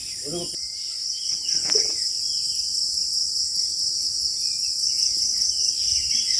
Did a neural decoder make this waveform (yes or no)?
no